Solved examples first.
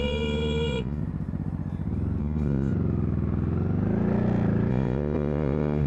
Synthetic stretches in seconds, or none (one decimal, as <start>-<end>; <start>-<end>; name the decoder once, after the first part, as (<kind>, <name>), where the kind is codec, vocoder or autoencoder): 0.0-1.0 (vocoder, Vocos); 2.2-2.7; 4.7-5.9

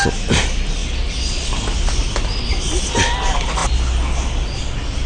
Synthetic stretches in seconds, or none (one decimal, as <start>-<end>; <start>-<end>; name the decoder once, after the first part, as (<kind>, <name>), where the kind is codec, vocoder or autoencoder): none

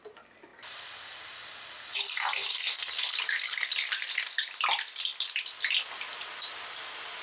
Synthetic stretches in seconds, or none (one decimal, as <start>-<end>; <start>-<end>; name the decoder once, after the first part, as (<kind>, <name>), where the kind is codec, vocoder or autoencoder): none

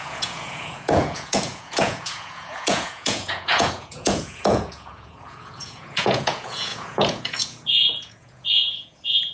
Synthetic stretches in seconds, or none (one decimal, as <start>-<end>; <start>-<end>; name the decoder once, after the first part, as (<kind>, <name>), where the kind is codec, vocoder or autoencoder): 0.0-9.3 (vocoder, Vocos)

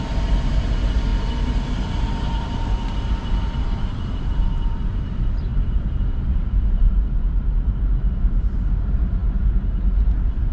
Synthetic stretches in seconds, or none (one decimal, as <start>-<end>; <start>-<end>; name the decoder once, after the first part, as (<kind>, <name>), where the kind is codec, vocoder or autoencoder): 0.0-1.1 (vocoder, BigVGAN v2); 2.0-10.5

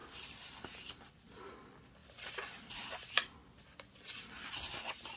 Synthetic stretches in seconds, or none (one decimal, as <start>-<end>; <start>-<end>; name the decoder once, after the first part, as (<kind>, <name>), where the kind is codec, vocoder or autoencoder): none

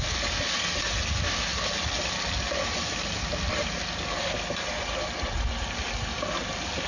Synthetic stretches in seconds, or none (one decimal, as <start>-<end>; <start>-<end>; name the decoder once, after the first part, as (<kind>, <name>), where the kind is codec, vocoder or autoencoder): none

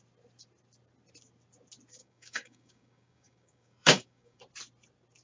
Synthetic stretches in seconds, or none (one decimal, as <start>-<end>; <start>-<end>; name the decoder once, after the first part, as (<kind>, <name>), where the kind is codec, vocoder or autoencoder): 2.0-4.4 (codec, DAC)